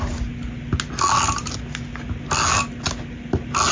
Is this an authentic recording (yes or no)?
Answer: yes